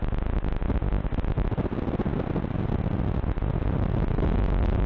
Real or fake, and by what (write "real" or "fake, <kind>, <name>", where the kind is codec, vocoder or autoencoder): real